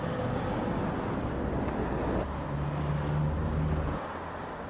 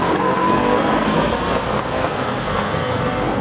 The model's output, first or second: second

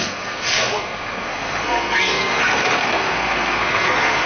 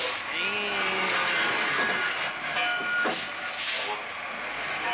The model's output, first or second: first